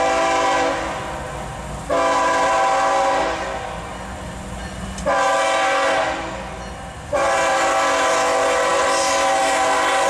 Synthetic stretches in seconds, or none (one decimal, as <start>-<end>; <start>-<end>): none